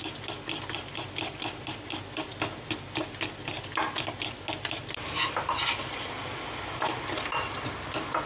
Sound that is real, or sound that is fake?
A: real